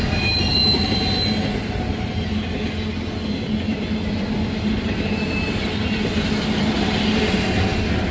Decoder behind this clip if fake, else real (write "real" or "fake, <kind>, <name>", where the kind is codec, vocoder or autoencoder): real